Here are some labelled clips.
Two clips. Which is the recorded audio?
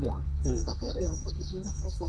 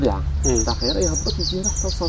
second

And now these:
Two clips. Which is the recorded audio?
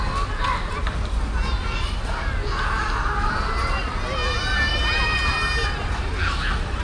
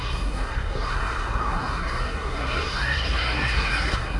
first